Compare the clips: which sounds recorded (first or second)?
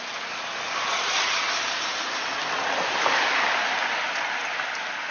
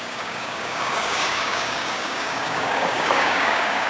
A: first